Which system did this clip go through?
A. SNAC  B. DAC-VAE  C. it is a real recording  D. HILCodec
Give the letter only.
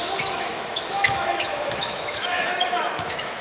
B